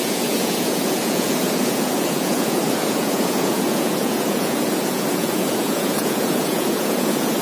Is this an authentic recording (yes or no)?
no